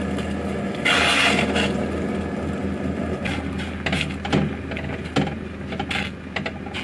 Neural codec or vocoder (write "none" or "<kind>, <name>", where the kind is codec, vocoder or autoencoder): none